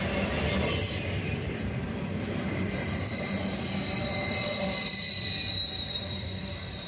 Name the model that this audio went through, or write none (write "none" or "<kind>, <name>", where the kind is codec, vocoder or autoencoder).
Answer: vocoder, BigVGAN v2